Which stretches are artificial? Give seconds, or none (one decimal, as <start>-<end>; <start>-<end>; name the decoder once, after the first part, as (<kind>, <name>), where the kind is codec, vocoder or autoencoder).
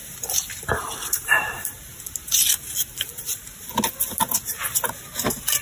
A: 0.0-2.0 (vocoder, BigVGAN v2); 3.1-3.7